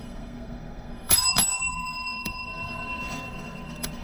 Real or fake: fake